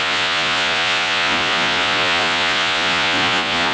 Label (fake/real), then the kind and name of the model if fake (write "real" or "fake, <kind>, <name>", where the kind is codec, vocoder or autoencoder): fake, vocoder, Vocos